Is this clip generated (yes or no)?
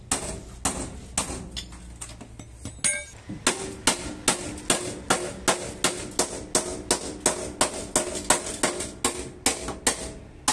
no